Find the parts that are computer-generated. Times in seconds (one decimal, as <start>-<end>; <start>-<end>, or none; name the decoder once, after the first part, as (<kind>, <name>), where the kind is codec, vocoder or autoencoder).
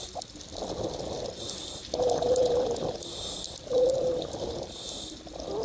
0.5-1.0 (vocoder, BigVGAN v2); 2.4-3.9